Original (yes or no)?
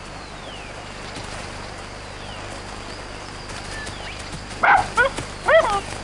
yes